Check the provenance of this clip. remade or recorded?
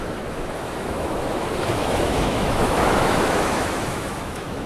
remade